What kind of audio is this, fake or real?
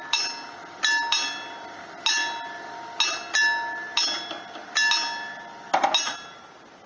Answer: real